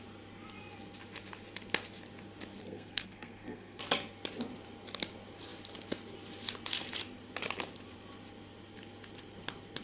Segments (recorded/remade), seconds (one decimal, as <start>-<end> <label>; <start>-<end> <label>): 0.0-2.6 recorded; 2.6-3.8 remade; 3.8-9.8 recorded